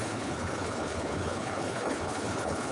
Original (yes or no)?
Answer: no